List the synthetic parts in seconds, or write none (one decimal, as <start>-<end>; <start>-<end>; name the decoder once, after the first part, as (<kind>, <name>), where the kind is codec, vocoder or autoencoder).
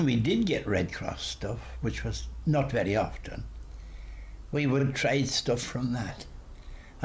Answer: none